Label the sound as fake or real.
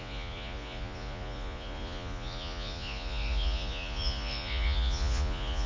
fake